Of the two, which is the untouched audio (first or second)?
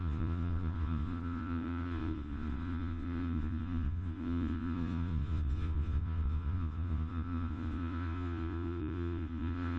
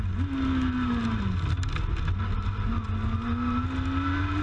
second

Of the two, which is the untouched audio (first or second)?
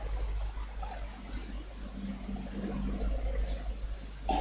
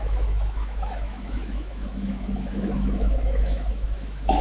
first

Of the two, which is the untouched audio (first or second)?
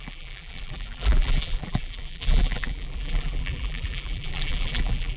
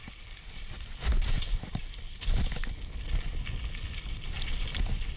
second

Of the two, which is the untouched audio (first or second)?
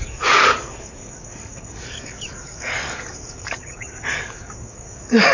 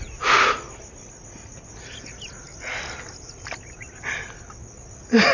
second